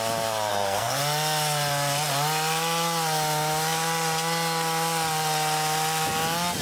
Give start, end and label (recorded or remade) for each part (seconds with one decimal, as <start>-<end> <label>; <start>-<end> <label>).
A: 0.0-0.5 recorded; 0.5-1.0 remade; 1.0-6.6 recorded